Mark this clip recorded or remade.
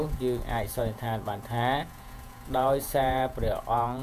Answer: remade